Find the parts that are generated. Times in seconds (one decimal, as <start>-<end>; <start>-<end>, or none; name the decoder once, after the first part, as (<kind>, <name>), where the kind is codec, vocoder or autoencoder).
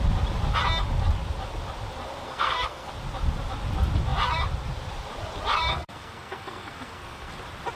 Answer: 2.2-2.9 (codec, SNAC); 5.7-7.3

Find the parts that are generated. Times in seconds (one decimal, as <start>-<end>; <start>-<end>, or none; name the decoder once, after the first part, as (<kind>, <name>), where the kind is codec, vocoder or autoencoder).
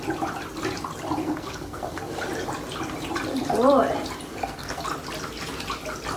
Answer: 1.2-2.0 (codec, SNAC); 4.3-4.8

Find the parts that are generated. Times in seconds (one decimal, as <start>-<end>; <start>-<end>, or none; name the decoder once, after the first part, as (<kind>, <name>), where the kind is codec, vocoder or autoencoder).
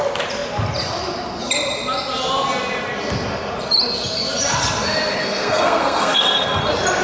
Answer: 5.2-6.6 (codec, SNAC)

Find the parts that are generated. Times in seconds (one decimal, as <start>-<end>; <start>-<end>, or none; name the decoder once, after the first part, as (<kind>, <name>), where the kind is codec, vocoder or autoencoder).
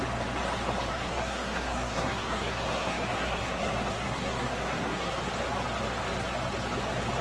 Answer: 0.9-5.2 (codec, SNAC)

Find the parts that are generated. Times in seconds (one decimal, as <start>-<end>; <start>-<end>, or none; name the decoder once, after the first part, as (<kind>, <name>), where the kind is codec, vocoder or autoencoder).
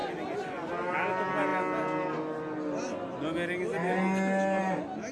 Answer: none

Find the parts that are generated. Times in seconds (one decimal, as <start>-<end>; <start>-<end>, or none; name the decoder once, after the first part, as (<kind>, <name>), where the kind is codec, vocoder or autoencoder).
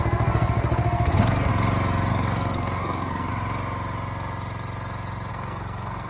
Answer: 0.0-1.5 (codec, SNAC); 2.1-3.3; 5.3-6.1